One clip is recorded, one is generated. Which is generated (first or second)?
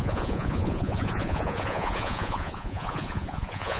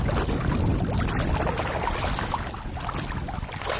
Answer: first